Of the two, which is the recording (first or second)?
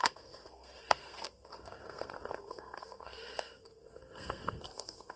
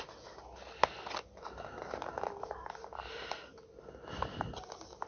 second